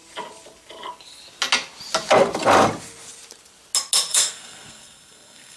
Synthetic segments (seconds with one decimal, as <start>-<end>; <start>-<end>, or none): 4.1-5.6